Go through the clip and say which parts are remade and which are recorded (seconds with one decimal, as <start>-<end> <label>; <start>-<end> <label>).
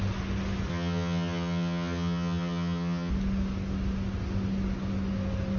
0.0-0.7 recorded; 0.7-3.1 remade; 3.1-5.6 recorded